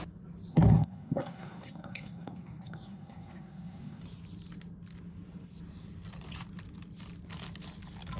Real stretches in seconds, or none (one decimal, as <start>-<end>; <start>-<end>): 0.0-0.5; 4.0-8.2